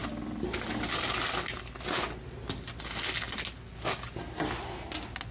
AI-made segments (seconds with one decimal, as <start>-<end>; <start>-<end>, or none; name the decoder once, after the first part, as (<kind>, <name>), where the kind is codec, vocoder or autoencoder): none